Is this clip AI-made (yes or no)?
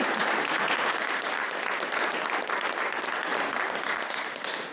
no